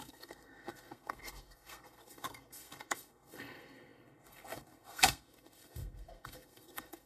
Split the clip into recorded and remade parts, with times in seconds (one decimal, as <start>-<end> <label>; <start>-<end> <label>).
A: 0.0-7.1 remade